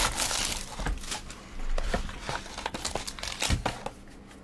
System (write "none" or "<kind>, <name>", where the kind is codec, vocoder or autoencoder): none